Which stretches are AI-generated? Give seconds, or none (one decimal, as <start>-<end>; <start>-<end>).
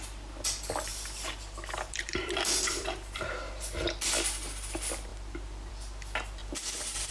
0.9-3.6; 6.4-7.1